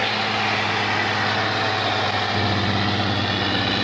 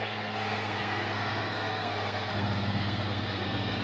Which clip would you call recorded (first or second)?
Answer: first